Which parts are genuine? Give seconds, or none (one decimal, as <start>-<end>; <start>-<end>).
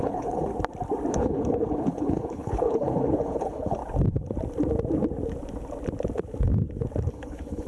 0.5-1.1; 3.8-7.1